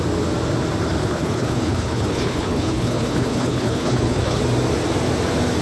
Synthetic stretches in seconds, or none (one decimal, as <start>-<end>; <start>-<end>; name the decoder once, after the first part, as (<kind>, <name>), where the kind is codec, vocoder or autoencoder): 1.0-4.4 (codec, HILCodec)